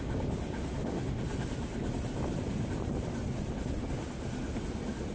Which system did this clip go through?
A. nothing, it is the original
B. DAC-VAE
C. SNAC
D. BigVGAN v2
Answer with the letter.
A